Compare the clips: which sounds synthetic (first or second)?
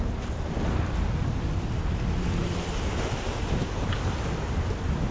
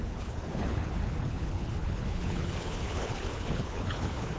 second